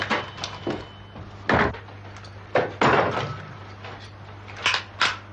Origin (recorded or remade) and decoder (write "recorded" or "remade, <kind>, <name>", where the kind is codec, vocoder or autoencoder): recorded